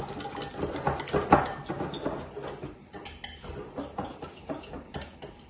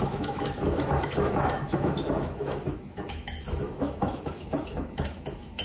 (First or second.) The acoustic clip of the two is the first